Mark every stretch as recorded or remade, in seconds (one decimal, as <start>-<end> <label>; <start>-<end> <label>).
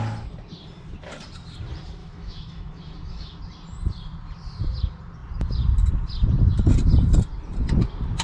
0.0-2.0 recorded; 2.0-3.4 remade; 3.4-8.2 recorded